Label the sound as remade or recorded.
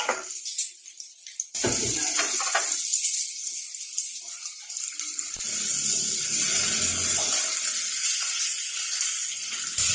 recorded